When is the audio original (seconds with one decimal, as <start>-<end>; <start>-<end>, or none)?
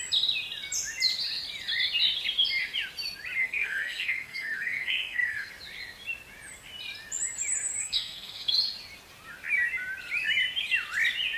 0.0-3.4; 5.5-7.8; 8.5-11.4